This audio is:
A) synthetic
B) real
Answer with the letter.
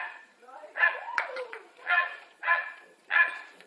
A